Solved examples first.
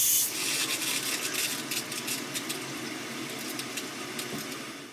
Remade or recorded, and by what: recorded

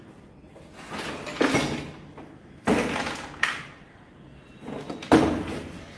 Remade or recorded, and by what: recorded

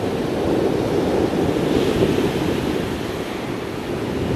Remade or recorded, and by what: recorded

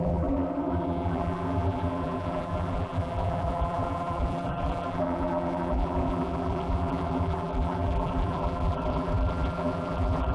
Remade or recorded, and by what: remade, vocoder, BigVGAN v2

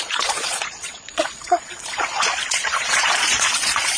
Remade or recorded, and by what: remade, vocoder, Vocos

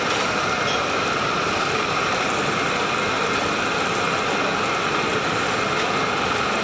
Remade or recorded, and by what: recorded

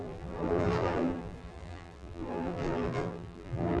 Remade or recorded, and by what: remade, vocoder, BigVGAN v2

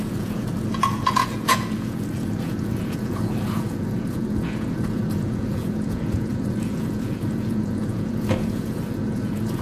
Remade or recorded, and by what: remade, vocoder, Vocos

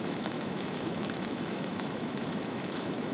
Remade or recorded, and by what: remade, autoencoder, DAC-VAE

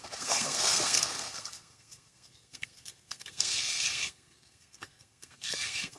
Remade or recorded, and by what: remade, codec, SNAC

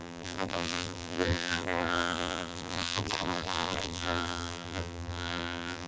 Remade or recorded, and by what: remade, vocoder, BigVGAN v2